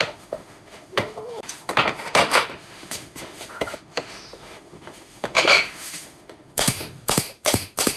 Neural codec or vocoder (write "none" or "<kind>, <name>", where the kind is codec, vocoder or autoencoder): autoencoder, DAC-VAE